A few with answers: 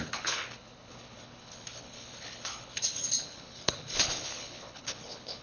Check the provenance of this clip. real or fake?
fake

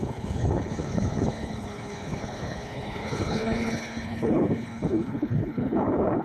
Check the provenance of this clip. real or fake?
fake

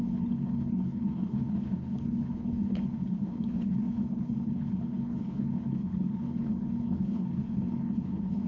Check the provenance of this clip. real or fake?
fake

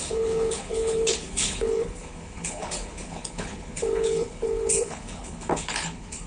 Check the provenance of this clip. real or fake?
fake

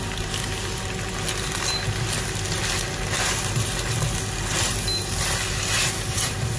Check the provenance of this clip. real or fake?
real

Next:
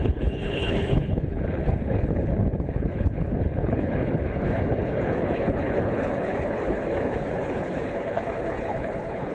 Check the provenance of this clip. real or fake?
fake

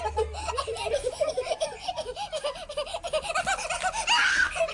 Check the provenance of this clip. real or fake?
real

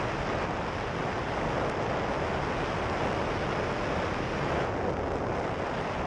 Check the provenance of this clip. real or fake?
real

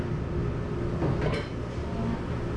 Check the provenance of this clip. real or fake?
real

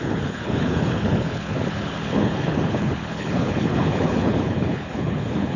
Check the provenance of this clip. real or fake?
fake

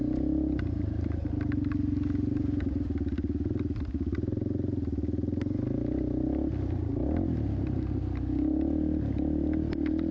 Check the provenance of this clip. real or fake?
real